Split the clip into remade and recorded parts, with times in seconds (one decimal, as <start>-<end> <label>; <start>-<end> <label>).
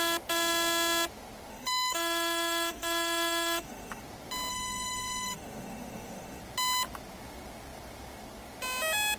0.0-1.5 recorded; 1.5-4.0 remade; 4.0-4.5 recorded; 4.5-6.4 remade; 6.4-9.2 recorded